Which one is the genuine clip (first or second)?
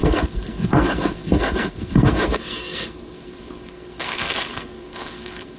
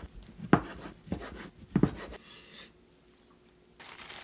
second